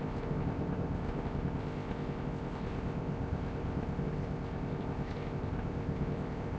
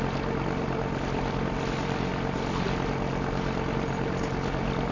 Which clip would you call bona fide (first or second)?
second